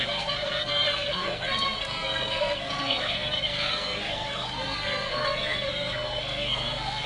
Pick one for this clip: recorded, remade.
remade